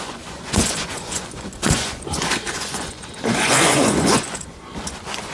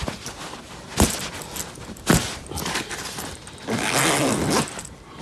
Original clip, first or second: second